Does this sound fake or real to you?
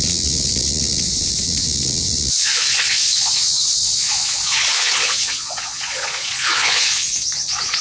fake